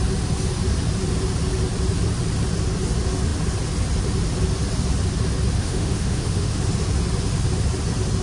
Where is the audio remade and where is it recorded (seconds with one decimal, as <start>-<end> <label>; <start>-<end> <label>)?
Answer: 0.0-5.6 recorded; 5.6-6.6 remade; 6.6-8.2 recorded